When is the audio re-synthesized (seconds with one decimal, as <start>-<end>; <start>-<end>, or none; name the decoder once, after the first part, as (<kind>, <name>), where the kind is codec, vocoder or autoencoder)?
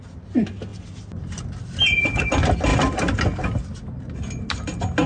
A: none